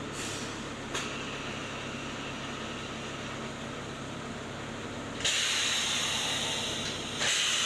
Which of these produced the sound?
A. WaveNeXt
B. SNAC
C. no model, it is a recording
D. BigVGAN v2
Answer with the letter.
C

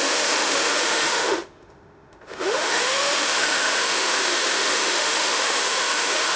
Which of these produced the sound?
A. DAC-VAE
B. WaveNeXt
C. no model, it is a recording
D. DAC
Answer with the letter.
A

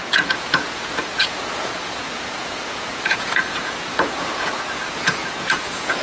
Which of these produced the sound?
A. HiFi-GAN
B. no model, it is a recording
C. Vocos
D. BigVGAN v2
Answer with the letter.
C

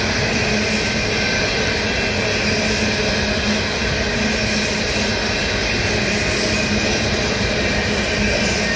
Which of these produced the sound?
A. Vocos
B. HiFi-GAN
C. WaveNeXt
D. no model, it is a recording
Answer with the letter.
D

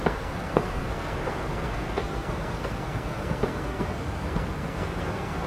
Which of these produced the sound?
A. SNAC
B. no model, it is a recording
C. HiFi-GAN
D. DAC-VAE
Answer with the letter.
A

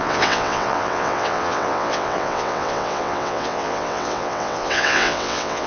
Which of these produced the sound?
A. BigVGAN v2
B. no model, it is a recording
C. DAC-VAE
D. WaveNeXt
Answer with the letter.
D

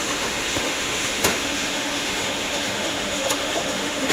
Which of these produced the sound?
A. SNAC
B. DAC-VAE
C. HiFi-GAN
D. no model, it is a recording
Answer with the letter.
B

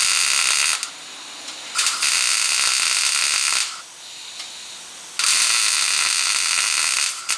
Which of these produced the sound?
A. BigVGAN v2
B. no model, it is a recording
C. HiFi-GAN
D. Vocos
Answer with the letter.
B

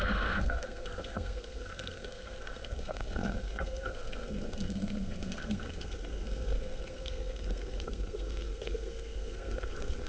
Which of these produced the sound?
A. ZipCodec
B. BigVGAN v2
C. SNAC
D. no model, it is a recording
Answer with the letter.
C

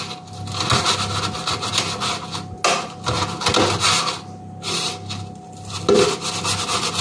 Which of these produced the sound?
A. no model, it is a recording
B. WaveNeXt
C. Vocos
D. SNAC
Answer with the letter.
A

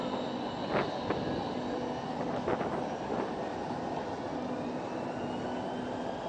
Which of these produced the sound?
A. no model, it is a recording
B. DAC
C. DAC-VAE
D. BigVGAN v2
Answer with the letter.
A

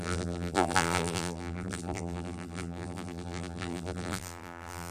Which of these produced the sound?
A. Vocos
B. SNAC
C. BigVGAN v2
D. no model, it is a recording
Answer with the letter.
C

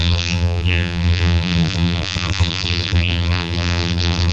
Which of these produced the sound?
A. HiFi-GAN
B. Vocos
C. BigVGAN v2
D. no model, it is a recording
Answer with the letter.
C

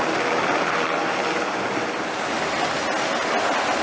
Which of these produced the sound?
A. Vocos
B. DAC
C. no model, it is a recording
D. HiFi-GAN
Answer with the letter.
C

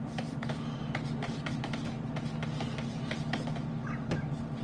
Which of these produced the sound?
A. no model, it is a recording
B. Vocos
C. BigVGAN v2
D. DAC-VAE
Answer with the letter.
A